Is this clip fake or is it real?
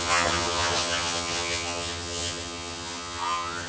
fake